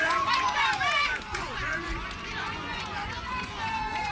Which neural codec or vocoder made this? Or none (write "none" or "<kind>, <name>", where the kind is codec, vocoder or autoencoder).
vocoder, Vocos